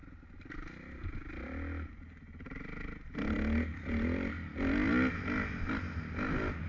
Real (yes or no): yes